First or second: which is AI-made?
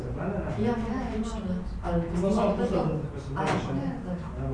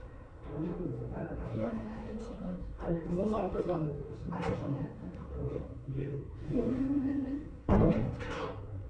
second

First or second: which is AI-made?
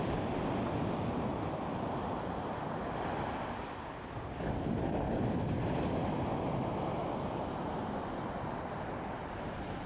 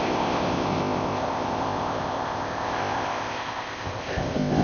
second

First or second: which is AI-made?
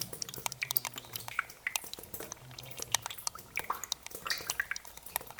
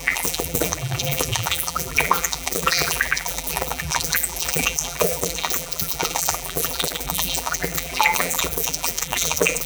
second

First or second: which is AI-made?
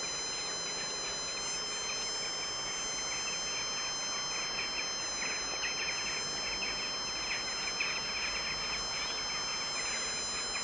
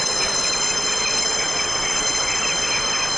second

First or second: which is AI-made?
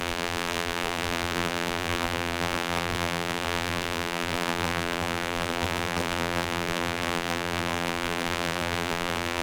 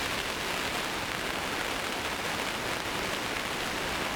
first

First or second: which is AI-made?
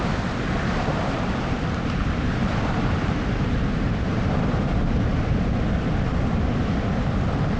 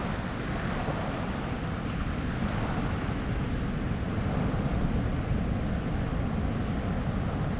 first